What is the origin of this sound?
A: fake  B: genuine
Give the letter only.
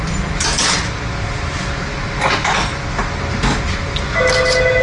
B